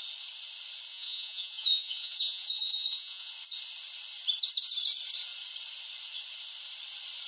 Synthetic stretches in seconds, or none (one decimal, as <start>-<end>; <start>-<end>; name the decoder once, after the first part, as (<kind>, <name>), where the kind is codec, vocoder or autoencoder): 0.9-3.3 (vocoder, Vocos)